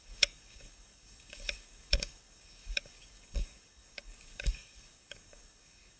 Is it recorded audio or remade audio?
remade